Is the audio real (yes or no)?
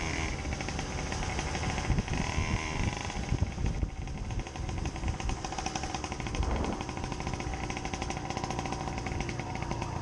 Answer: yes